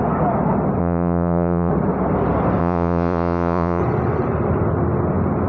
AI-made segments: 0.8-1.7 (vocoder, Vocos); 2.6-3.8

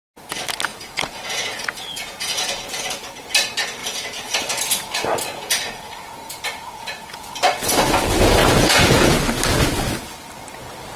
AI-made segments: 0.7-3.1 (vocoder, Vocos); 3.8-7.3; 8.4-9.1